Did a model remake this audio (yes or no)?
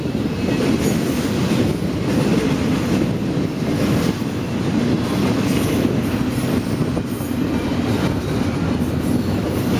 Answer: no